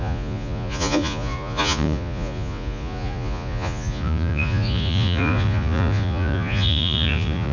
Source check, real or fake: fake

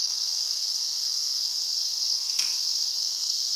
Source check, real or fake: fake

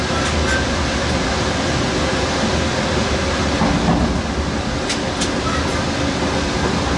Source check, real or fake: real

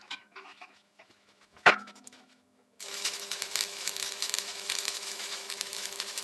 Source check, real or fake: fake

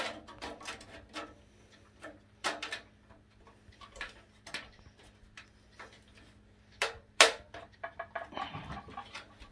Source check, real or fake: real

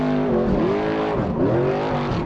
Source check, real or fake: real